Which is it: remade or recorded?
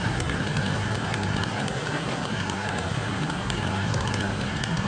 remade